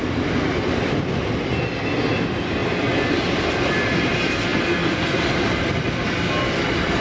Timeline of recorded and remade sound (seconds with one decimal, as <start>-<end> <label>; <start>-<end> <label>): 0.0-7.0 recorded